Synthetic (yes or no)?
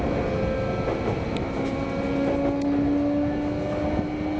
no